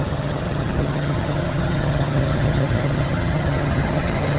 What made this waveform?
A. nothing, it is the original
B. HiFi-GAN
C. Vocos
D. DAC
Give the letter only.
B